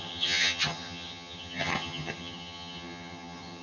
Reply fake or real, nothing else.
fake